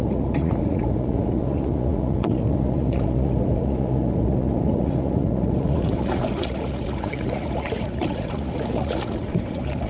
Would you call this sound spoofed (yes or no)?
yes